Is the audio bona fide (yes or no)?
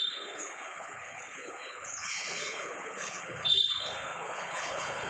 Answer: no